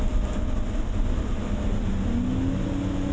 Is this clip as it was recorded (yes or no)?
yes